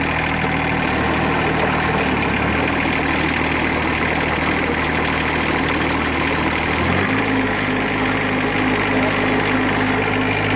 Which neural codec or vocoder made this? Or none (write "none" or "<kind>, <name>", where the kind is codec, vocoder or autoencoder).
none